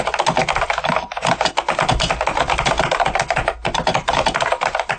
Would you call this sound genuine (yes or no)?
yes